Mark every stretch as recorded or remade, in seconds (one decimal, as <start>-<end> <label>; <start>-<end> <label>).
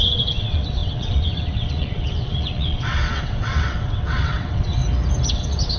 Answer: 0.0-4.8 remade; 4.8-5.3 recorded; 5.3-5.8 remade